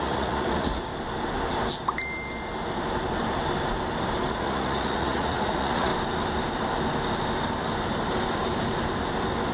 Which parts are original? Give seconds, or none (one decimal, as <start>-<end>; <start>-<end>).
0.9-4.3; 5.9-9.5